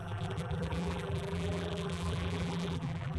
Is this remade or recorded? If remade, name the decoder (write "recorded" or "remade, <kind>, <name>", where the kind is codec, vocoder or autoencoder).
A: remade, vocoder, BigVGAN v2